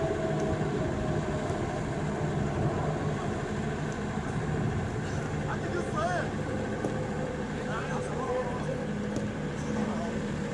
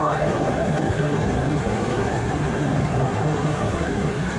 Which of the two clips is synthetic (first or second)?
second